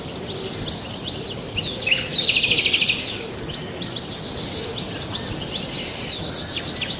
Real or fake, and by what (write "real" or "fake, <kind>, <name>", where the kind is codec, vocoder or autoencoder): real